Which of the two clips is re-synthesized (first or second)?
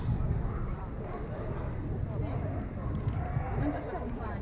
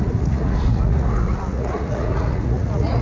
second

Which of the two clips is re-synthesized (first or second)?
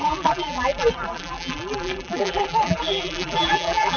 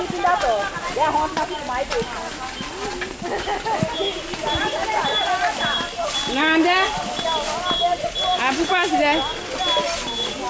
first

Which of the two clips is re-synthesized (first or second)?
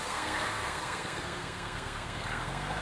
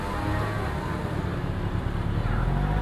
first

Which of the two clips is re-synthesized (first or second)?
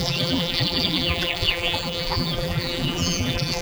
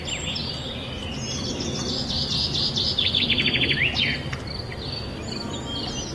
first